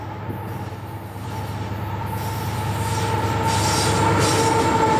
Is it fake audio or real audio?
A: real